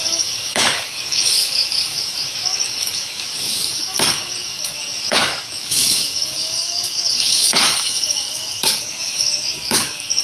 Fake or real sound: fake